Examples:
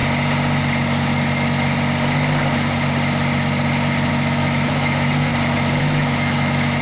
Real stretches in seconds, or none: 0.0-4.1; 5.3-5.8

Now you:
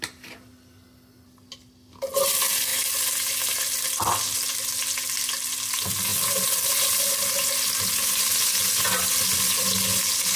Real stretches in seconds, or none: 0.0-10.4